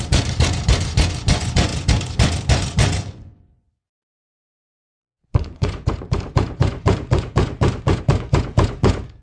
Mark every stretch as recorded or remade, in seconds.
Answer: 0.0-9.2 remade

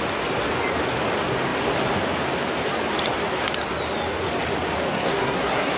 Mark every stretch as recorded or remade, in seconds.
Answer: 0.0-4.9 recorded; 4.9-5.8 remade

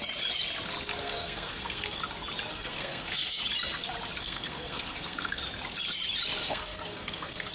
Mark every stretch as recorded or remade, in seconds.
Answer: 0.0-1.0 recorded; 1.0-2.0 remade; 2.0-2.5 recorded; 2.5-3.4 remade; 3.4-4.2 recorded; 4.2-5.4 remade; 5.4-6.4 recorded; 6.4-7.5 remade